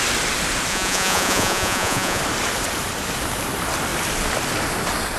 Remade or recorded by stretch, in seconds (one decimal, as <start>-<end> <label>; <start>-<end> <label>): 0.0-0.7 recorded; 0.7-2.2 remade; 2.2-5.2 recorded